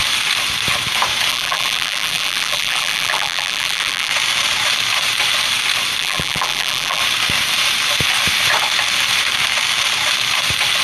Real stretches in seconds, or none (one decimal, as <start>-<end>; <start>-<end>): 0.0-1.3; 4.1-6.0; 7.0-10.8

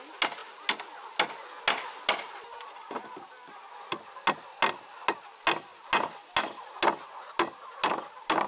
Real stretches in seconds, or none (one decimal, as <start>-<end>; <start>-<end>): 0.0-8.5

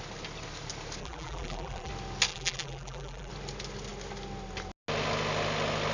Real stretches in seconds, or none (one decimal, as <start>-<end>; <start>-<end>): 0.0-1.0; 1.9-2.3; 3.3-5.9

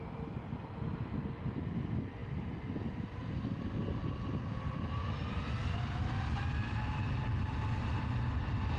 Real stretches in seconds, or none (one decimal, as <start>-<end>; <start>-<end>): 0.0-8.8

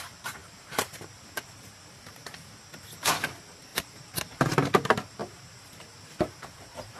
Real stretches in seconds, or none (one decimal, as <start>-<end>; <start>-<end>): 0.0-0.4; 2.5-3.7; 4.2-5.2

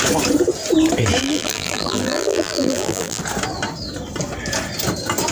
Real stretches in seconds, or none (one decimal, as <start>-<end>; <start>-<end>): 0.0-1.2; 3.2-5.3